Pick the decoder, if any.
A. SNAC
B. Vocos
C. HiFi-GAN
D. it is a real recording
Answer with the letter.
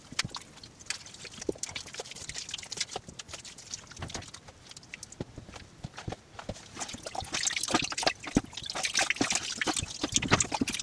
D